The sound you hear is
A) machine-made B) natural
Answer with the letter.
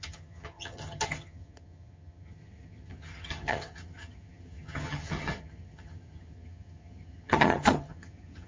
A